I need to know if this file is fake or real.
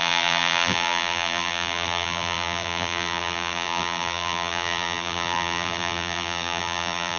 fake